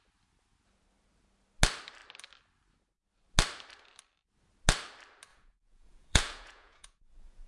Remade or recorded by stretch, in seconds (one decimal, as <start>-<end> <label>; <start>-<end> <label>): 0.0-5.3 recorded; 5.3-7.5 remade